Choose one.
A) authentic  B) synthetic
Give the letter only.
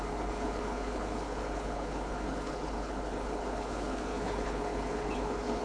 B